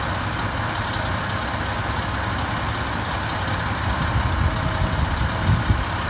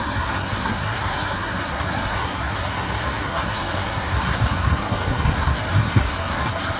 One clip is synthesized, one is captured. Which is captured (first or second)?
first